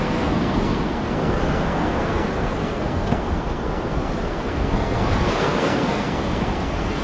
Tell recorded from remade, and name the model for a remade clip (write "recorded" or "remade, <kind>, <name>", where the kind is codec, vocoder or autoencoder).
remade, codec, SNAC